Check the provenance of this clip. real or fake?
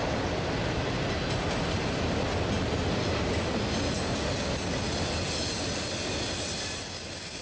real